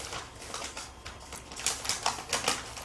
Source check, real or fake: real